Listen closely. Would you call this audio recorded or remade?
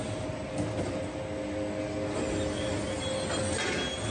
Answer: recorded